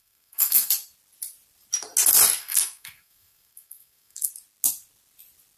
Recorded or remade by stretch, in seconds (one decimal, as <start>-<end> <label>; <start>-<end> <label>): 0.0-0.7 remade; 0.7-2.4 recorded; 2.4-4.3 remade; 4.3-5.6 recorded